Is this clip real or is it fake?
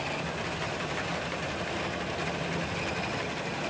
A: real